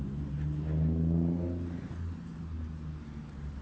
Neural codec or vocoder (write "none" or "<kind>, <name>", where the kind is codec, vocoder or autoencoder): none